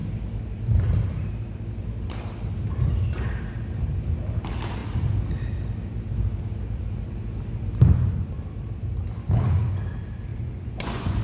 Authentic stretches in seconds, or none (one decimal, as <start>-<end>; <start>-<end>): 0.0-10.3